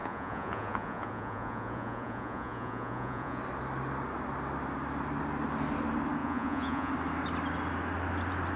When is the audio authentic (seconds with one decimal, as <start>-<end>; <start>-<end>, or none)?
3.4-6.2; 6.9-8.6